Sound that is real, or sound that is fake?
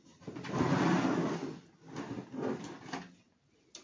real